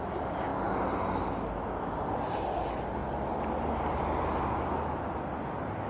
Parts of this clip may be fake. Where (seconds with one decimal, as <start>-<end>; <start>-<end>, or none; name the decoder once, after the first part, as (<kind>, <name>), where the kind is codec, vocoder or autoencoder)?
none